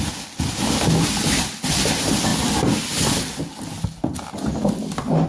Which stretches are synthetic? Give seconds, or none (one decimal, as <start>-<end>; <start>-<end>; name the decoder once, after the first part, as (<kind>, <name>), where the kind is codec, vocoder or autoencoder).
none